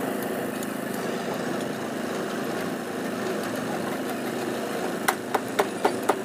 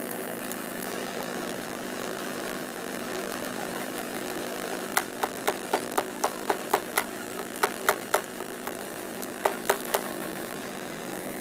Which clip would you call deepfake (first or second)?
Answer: second